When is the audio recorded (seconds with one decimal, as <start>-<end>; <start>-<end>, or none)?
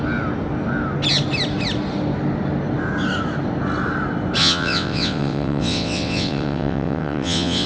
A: 0.0-4.4